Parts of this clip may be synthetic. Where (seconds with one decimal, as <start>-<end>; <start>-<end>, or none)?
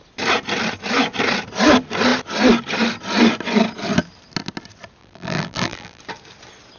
5.0-6.0